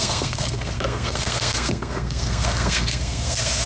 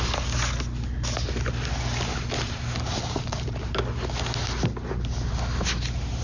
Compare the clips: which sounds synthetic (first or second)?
first